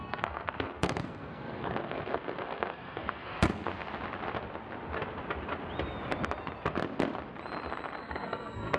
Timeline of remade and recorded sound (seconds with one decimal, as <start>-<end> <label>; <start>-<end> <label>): 0.0-3.7 remade; 3.7-8.0 recorded; 8.0-8.8 remade